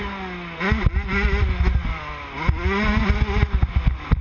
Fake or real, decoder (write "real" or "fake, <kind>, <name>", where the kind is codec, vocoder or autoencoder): real